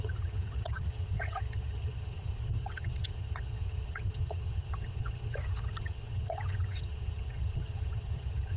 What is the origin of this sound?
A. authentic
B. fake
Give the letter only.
B